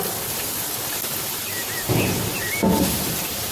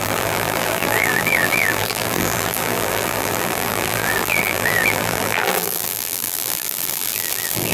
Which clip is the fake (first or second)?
second